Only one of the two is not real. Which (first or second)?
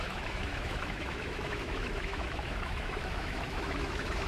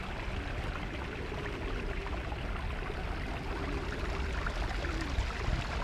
first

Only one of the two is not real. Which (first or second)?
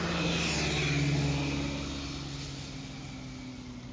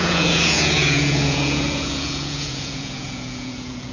second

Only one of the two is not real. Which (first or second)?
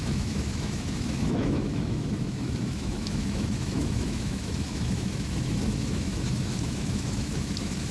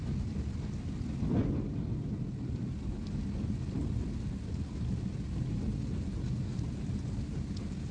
first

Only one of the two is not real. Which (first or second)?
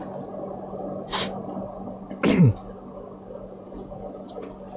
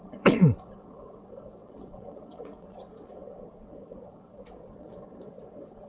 second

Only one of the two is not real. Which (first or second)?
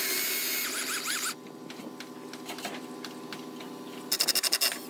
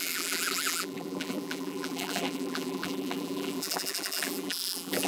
second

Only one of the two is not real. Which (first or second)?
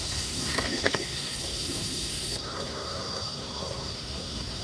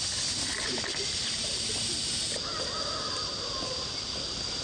first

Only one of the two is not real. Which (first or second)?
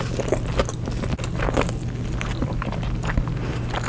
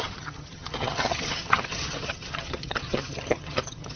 second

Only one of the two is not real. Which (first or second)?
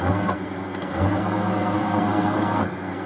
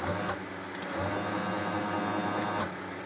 first